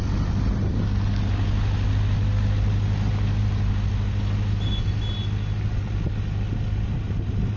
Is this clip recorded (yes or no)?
yes